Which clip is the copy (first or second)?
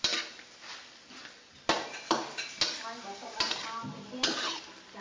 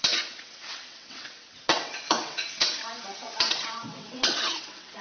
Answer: second